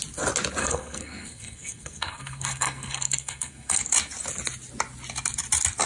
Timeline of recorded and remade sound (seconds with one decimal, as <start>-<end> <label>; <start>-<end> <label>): 0.0-0.6 recorded; 0.6-3.8 remade; 3.8-5.9 recorded